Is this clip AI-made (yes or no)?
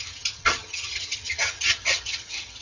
yes